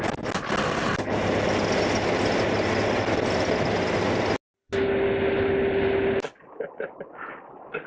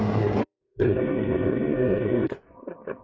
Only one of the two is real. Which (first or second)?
first